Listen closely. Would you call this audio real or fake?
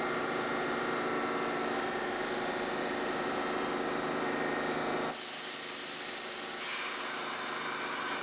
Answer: real